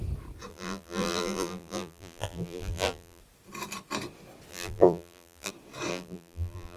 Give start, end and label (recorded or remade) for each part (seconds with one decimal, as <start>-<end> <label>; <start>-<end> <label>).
0.0-0.5 recorded; 0.5-3.2 remade; 3.2-4.5 recorded; 4.5-5.5 remade; 5.5-5.9 recorded; 5.9-6.8 remade